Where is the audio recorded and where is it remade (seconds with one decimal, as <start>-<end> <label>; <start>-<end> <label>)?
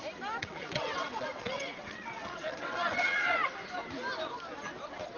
0.0-0.4 recorded; 0.4-3.5 remade; 3.5-5.2 recorded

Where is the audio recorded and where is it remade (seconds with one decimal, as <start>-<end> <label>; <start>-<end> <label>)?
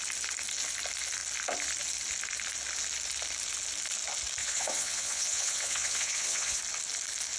0.0-4.4 recorded; 4.4-6.6 remade; 6.6-7.4 recorded